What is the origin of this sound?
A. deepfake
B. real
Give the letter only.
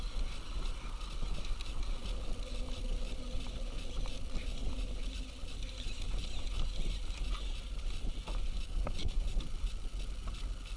B